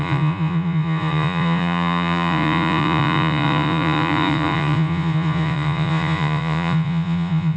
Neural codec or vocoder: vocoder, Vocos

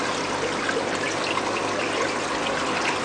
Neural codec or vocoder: none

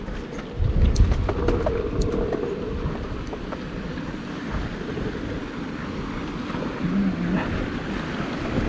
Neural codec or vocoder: none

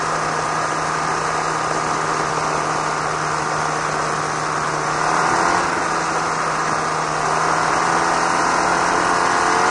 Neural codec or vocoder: none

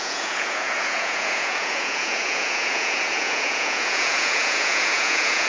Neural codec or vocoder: vocoder, Vocos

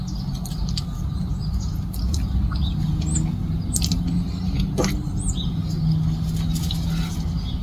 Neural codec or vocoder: none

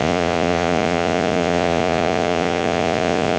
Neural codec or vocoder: vocoder, Vocos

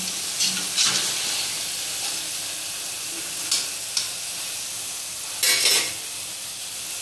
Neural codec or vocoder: none